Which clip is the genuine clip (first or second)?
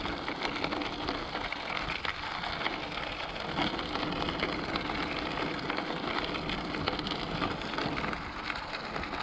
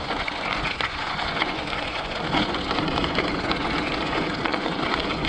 first